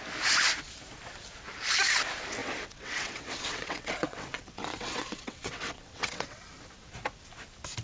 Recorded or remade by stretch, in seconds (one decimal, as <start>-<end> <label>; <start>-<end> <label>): 0.0-2.4 recorded; 2.4-6.4 remade; 6.4-7.8 recorded